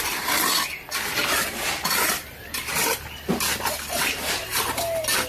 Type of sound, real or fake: real